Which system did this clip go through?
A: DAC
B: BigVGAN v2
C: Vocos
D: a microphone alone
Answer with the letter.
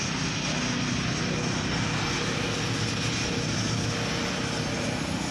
D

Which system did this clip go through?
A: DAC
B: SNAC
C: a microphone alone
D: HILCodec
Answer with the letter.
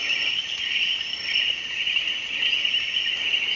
C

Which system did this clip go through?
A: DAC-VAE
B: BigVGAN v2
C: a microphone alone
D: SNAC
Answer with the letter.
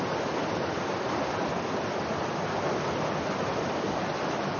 C